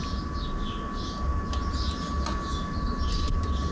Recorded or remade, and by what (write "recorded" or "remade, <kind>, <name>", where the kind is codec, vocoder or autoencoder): recorded